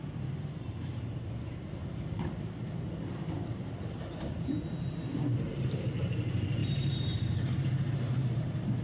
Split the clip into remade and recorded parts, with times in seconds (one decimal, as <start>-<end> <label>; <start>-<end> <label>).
0.0-1.8 remade; 1.8-2.8 recorded; 2.8-8.8 remade

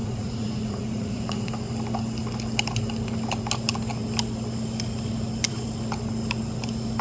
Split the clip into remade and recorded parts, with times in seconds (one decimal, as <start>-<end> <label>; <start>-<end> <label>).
0.0-1.5 remade; 1.5-7.0 recorded

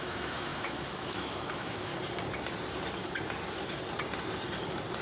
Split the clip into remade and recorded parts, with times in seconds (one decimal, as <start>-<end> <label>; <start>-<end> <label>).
0.0-1.9 remade; 1.9-5.0 recorded

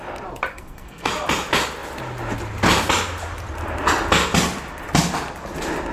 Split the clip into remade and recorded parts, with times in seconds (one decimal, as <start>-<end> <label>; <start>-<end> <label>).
0.0-0.5 recorded; 0.5-1.1 remade; 1.1-5.9 recorded

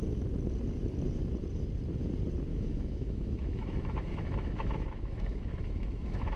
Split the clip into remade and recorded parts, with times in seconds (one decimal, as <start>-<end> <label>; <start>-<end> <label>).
0.0-2.5 recorded; 2.5-6.4 remade

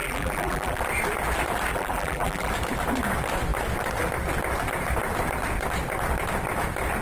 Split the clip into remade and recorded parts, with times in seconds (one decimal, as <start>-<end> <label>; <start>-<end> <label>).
0.0-0.8 remade; 0.8-1.7 recorded; 1.7-2.5 remade; 2.5-7.0 recorded

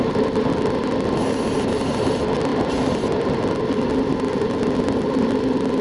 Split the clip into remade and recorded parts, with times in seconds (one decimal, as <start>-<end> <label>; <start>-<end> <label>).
0.0-5.8 recorded